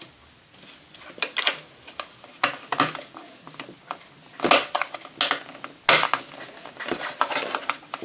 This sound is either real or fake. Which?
real